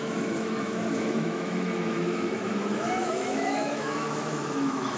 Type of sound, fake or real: fake